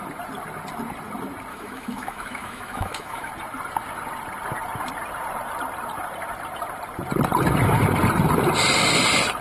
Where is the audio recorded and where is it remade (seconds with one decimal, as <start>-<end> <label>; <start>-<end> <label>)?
0.0-1.5 recorded; 1.5-3.3 remade; 3.3-9.4 recorded